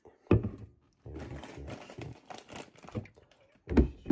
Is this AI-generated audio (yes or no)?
no